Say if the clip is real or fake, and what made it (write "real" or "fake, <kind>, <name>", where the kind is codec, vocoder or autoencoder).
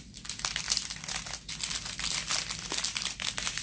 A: real